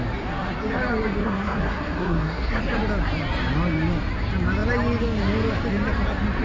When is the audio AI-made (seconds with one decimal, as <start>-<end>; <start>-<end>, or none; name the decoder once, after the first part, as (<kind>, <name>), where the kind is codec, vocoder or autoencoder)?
1.2-2.6 (codec, SNAC)